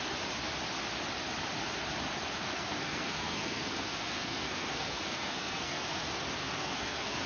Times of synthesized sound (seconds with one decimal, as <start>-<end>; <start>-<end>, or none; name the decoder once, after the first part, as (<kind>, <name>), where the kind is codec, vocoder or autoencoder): 2.4-6.0 (codec, SNAC); 6.4-7.3